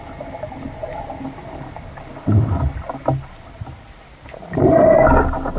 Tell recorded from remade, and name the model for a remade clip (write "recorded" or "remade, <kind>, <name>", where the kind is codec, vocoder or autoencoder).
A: recorded